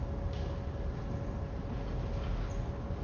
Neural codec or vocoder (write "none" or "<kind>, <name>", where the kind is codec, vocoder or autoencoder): none